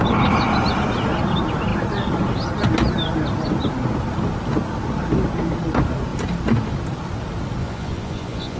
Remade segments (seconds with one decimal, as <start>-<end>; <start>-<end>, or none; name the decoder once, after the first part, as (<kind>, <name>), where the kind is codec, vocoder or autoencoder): 7.6-8.6 (vocoder, Vocos)